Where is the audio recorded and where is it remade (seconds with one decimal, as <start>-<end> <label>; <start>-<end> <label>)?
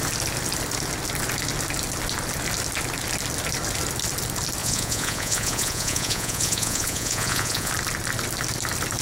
0.0-4.6 recorded; 4.6-7.7 remade; 7.7-9.0 recorded